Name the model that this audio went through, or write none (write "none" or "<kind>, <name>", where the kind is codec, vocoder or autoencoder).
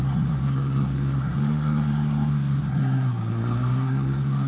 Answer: codec, SNAC